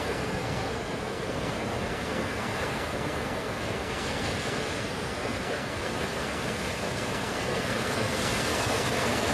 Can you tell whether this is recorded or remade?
remade